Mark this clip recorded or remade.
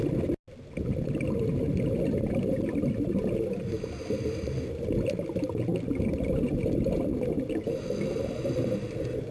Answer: recorded